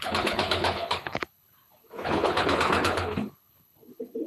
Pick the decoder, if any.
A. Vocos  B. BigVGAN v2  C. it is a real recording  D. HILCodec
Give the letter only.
D